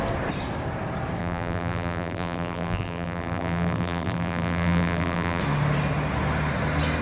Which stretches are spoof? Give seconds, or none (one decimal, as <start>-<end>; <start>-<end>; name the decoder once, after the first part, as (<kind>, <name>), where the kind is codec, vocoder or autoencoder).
1.2-5.4 (vocoder, BigVGAN v2)